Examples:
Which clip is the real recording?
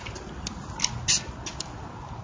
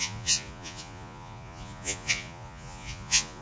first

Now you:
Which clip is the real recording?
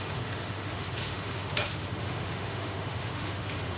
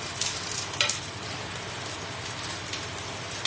second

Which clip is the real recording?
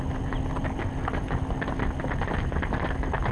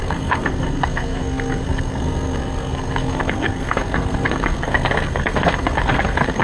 first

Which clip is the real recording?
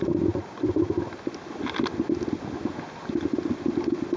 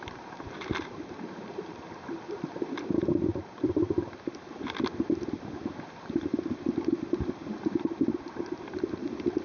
first